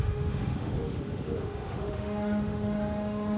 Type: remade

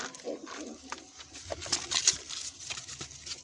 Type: recorded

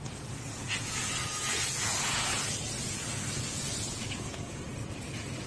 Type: remade